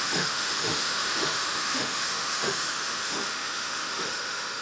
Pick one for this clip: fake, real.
fake